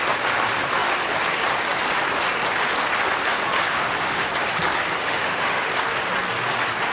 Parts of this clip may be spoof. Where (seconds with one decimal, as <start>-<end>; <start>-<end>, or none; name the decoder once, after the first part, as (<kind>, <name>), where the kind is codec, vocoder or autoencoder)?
3.7-4.3 (autoencoder, DAC-VAE); 5.0-5.7